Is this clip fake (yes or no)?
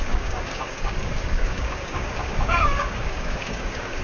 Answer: yes